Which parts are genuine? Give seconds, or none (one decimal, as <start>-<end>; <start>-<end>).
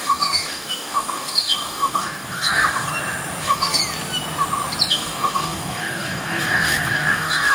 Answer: 2.9-3.4; 3.8-4.9